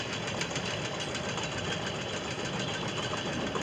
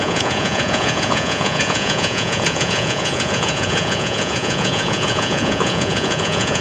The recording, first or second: first